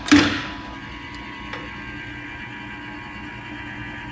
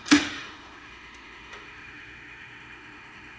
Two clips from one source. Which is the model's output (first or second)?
second